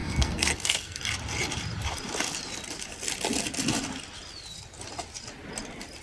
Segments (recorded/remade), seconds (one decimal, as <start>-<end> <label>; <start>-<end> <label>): 0.0-1.0 remade; 1.0-6.0 recorded